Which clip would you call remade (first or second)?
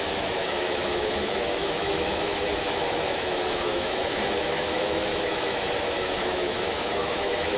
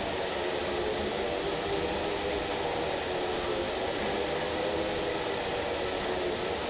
first